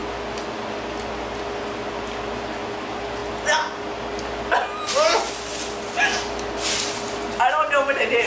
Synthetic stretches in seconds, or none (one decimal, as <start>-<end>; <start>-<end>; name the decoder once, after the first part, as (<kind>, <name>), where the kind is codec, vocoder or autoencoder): none